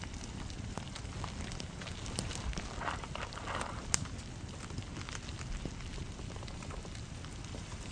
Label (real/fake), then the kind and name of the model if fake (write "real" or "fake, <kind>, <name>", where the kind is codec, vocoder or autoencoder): real